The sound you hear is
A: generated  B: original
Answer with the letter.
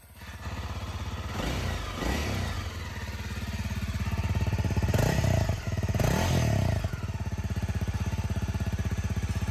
B